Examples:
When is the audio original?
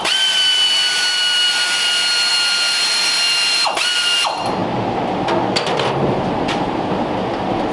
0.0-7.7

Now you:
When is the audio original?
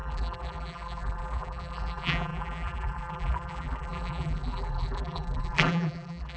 none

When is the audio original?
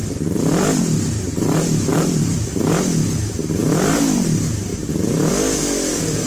0.8-1.9; 2.7-6.3